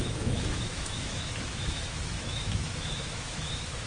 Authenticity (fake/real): fake